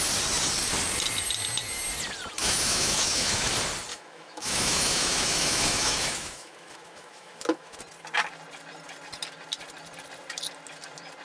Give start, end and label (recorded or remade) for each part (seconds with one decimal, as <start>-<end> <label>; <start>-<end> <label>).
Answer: 0.0-2.4 recorded; 2.4-3.5 remade; 3.5-3.9 recorded; 3.9-7.8 remade; 7.8-11.2 recorded